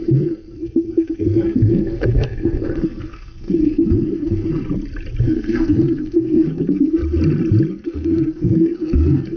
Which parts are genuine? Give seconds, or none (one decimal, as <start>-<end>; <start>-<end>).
4.6-5.2; 7.0-7.7